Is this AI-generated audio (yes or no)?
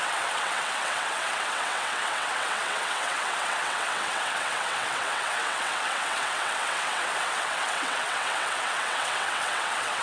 yes